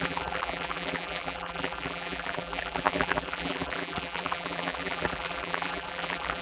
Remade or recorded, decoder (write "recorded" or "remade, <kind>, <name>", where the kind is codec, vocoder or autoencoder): remade, vocoder, BigVGAN v2